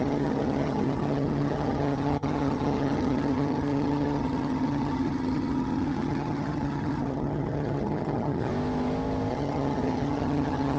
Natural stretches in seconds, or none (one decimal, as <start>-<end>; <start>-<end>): 8.5-9.3